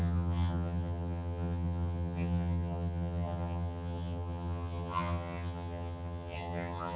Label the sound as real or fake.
fake